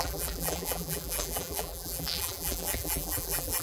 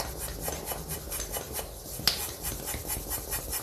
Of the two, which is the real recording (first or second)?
second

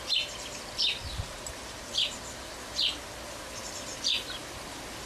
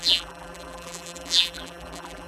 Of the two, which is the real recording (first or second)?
first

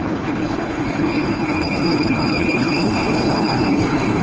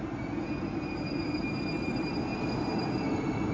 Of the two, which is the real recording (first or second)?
second